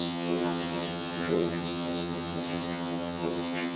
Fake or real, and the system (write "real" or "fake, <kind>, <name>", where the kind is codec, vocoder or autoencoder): fake, vocoder, HiFi-GAN